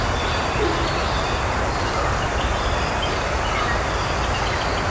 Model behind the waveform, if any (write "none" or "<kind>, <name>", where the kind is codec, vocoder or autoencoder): none